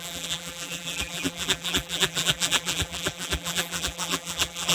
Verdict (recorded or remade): remade